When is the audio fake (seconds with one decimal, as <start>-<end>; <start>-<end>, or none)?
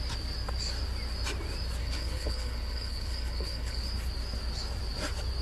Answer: 1.8-3.8